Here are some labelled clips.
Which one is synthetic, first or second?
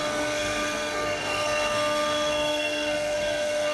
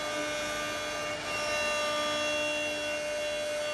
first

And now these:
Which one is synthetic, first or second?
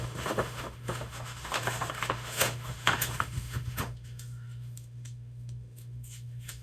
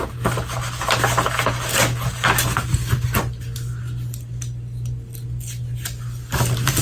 first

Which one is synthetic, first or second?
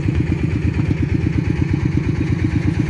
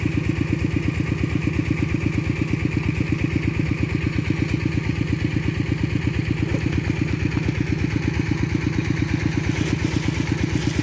first